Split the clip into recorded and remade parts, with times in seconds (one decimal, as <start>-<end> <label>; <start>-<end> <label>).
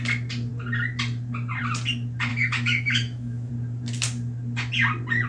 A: 0.0-2.3 recorded; 2.3-3.5 remade; 3.5-5.3 recorded